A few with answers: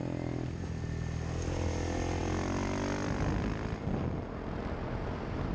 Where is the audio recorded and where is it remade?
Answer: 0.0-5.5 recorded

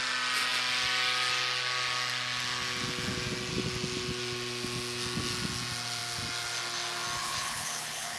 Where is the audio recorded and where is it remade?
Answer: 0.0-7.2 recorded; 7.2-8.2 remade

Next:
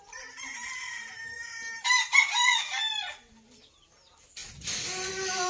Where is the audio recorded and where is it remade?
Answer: 0.0-5.5 recorded